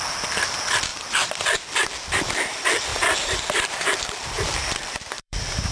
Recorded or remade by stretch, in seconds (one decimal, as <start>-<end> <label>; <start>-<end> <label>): 0.0-0.9 remade; 0.9-1.7 recorded; 1.7-5.7 remade